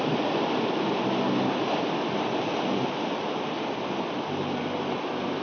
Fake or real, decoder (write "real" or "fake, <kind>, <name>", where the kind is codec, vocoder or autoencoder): real